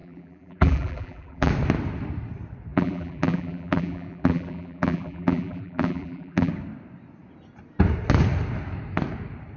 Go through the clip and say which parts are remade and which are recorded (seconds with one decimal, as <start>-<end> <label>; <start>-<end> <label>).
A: 0.0-1.5 remade; 1.5-2.7 recorded; 2.7-6.5 remade; 6.5-9.6 recorded